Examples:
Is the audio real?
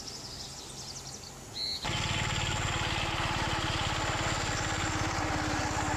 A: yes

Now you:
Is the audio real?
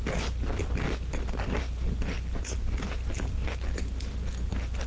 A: yes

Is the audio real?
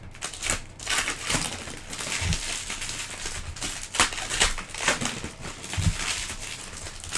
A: yes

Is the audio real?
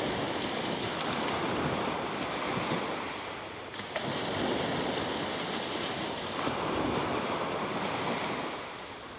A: yes